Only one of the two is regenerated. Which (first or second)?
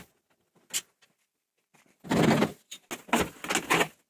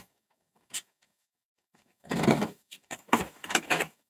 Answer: second